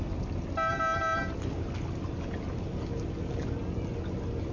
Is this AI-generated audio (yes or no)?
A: no